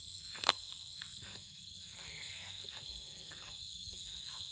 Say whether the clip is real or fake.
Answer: fake